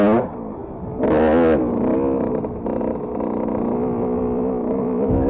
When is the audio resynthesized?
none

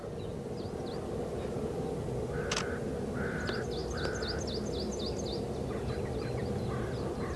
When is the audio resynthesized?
none

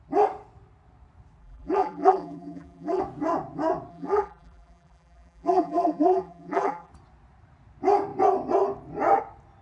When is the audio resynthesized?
1.4-3.0 (vocoder, BigVGAN v2); 3.9-6.9

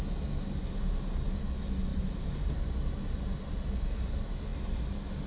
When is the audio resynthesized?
1.9-2.9 (vocoder, BigVGAN v2)